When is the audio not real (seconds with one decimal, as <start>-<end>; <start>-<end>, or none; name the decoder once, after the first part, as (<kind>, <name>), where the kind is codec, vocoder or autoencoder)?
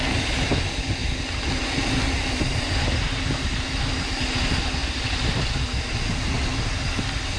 none